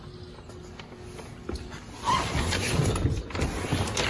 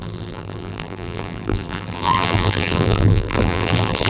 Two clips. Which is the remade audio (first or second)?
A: second